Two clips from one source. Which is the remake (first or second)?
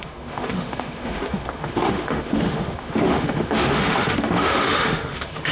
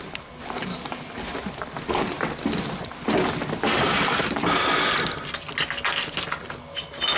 first